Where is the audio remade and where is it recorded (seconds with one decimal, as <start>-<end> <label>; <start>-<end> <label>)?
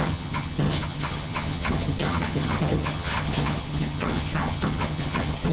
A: 0.0-5.5 remade